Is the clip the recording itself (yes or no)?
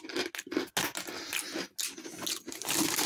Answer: yes